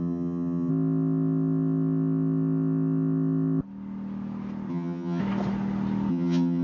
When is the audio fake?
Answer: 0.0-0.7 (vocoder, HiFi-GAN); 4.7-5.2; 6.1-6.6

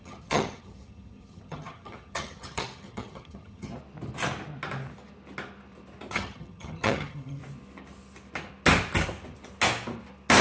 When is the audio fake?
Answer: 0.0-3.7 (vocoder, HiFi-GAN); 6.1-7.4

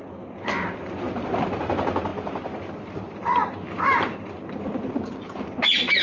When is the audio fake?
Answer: none

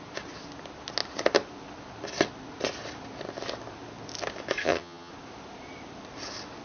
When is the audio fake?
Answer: 4.6-5.1 (vocoder, HiFi-GAN)

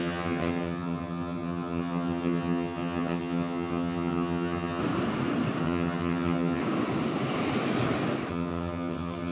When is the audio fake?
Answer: 0.0-4.8 (vocoder, HiFi-GAN); 5.6-6.6; 8.3-9.3

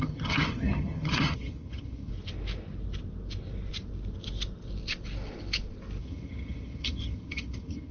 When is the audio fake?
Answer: 0.0-2.1 (vocoder, HiFi-GAN); 6.0-7.9